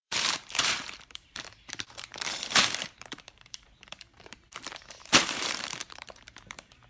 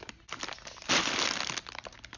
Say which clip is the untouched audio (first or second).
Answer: second